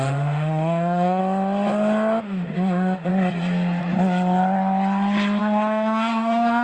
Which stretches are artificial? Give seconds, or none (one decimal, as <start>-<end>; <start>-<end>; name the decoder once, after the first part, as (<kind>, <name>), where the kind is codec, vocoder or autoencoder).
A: 0.0-1.2 (autoencoder, DAC-VAE); 2.2-3.1; 5.4-6.6